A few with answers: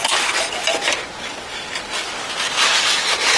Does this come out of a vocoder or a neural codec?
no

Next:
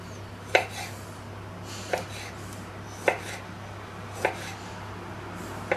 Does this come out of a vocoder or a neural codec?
no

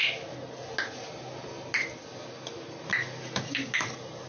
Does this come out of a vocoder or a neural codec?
no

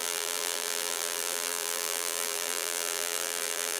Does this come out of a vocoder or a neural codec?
yes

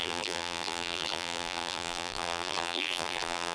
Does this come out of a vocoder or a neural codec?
yes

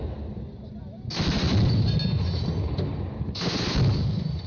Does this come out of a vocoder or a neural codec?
no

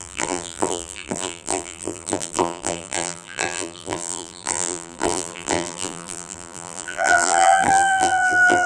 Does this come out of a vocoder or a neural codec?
yes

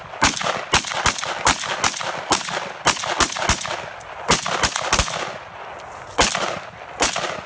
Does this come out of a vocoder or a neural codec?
no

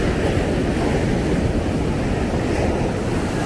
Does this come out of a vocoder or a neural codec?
no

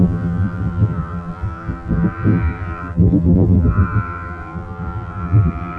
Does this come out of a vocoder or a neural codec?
yes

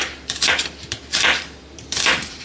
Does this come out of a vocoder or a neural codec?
yes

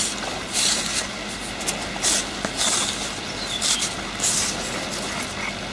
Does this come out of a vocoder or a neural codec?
no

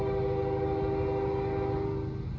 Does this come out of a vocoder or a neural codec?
no